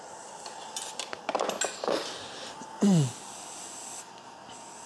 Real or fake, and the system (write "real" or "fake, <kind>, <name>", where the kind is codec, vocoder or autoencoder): real